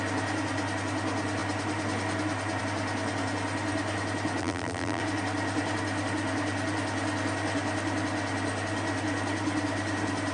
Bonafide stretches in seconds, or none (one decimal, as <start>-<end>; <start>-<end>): 0.0-4.4; 5.0-10.3